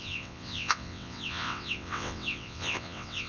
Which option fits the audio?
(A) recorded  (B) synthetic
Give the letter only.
B